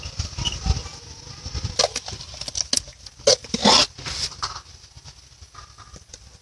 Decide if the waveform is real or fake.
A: real